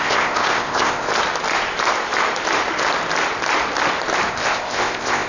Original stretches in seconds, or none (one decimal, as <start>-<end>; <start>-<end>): 1.1-4.3